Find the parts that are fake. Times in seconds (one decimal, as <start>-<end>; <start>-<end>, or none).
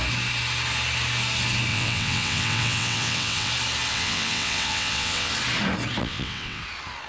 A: 1.7-3.5; 3.9-5.3; 6.0-6.6